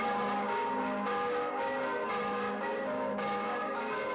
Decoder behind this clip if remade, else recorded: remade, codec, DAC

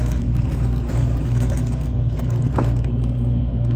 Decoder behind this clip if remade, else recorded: remade, codec, SNAC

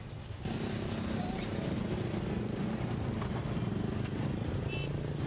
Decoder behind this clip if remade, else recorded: recorded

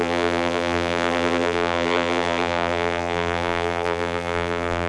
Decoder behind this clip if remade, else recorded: remade, vocoder, BigVGAN v2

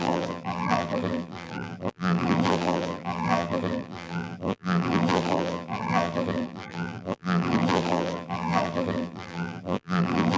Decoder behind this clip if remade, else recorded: remade, vocoder, BigVGAN v2